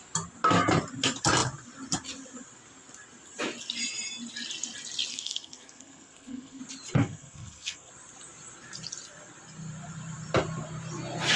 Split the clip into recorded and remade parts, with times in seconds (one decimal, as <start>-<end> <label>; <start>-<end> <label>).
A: 0.0-5.1 recorded; 5.1-6.6 remade; 6.6-7.0 recorded; 7.0-7.9 remade; 7.9-11.4 recorded